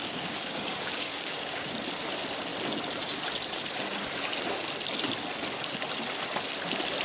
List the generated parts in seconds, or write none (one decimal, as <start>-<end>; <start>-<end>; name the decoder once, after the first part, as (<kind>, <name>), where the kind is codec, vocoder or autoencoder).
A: 0.0-1.7 (codec, DAC)